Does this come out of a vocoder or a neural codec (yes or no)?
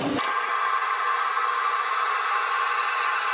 no